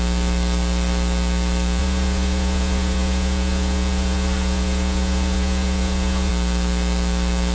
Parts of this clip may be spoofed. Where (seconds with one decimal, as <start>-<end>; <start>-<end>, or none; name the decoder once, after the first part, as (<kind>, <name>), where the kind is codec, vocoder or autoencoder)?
1.8-6.3 (vocoder, Vocos)